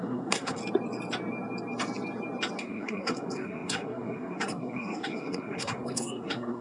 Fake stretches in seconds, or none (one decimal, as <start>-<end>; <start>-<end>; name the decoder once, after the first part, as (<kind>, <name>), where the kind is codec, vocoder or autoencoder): 0.0-0.6 (codec, SNAC); 2.6-6.6